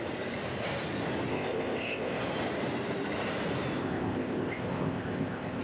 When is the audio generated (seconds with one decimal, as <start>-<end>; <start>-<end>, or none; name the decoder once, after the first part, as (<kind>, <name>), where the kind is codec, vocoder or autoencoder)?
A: 1.3-2.2 (codec, ZipCodec); 3.8-5.6